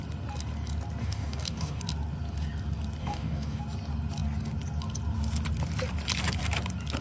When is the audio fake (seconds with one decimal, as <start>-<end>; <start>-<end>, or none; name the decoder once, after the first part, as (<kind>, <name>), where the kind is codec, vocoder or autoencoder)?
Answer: 1.0-1.8 (codec, DAC); 3.0-3.6

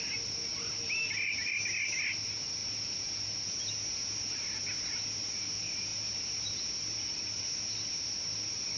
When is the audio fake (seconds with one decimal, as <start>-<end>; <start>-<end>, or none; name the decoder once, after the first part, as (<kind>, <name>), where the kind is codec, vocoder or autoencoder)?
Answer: none

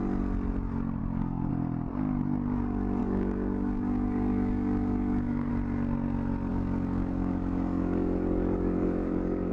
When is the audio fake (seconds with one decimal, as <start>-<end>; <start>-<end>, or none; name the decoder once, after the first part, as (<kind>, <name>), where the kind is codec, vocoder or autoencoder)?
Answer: 1.0-1.5 (codec, DAC); 3.0-5.5; 6.5-9.5

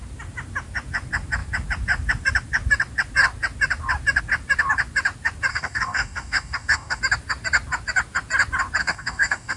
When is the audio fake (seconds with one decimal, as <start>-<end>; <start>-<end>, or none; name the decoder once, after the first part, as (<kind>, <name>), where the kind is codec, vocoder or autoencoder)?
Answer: 5.5-7.0 (codec, DAC); 8.8-9.6